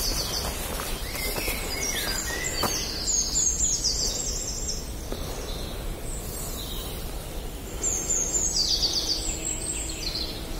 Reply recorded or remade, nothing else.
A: recorded